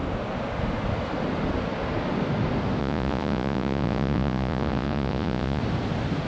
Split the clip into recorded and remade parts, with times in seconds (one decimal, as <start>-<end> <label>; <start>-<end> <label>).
0.0-2.8 recorded; 2.8-5.6 remade; 5.6-6.3 recorded